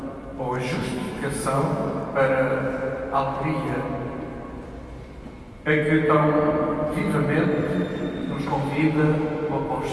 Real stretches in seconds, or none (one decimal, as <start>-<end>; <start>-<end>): 0.0-0.9; 2.0-9.9